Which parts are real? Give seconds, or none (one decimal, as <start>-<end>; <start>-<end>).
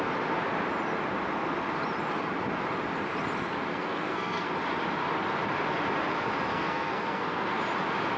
0.0-3.7; 4.5-6.5; 7.6-8.2